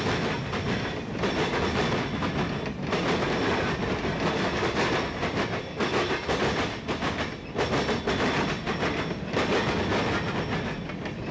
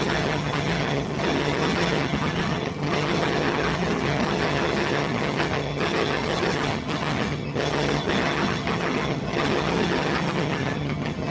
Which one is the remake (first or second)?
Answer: second